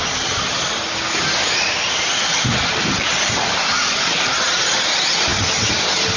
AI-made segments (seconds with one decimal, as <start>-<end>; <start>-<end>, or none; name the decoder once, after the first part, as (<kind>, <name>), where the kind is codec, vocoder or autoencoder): none